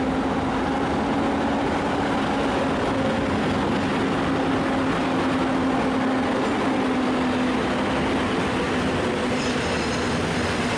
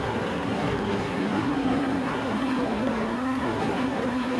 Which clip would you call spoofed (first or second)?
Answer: second